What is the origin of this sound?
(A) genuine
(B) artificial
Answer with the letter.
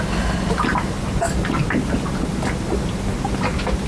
A